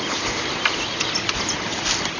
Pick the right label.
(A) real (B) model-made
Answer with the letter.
A